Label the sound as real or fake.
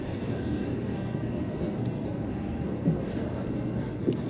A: fake